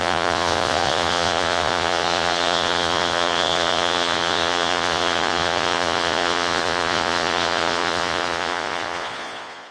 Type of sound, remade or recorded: remade